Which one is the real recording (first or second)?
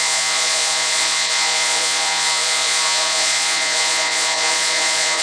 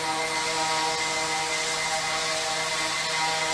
second